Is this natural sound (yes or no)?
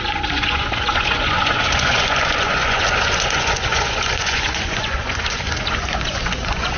no